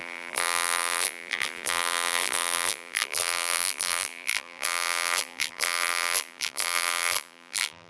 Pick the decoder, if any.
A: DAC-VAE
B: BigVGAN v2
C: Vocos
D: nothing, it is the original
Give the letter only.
B